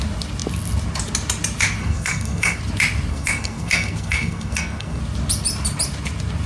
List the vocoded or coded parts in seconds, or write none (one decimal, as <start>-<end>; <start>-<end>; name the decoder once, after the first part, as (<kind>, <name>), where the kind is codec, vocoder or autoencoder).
1.8-2.6 (codec, SNAC); 3.1-5.0